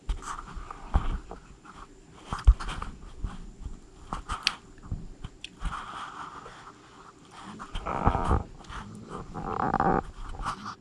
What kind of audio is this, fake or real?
real